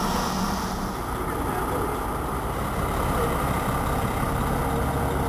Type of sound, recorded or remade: recorded